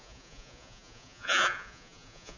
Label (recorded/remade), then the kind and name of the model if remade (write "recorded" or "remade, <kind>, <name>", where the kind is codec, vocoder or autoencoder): remade, vocoder, Vocos